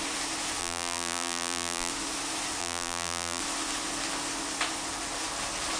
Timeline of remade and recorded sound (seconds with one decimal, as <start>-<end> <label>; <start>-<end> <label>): 0.0-0.6 recorded; 0.6-1.9 remade; 1.9-2.6 recorded; 2.6-3.4 remade; 3.4-5.8 recorded